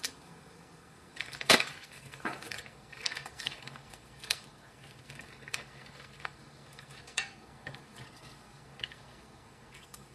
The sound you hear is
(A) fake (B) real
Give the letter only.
A